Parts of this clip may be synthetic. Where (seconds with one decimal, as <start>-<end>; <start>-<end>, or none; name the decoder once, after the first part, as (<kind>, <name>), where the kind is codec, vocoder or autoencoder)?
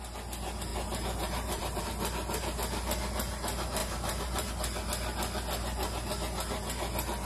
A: 0.7-1.8 (vocoder, BigVGAN v2); 3.8-4.5